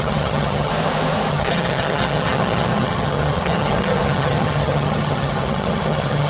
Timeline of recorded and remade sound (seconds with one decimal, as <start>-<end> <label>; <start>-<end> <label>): 0.0-0.7 remade; 0.7-1.3 recorded; 1.3-6.3 remade